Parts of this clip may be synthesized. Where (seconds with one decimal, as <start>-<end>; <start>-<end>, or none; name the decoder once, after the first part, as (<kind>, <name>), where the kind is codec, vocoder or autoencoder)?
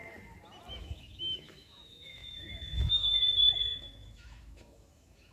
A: 0.8-5.3 (autoencoder, DAC-VAE)